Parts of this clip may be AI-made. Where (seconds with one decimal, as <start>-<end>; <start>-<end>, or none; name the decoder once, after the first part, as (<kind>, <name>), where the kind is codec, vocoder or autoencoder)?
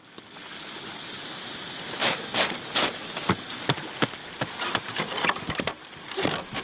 0.0-1.1 (vocoder, BigVGAN v2); 4.2-5.7